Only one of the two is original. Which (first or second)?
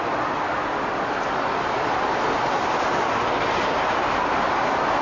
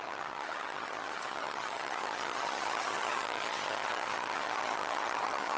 first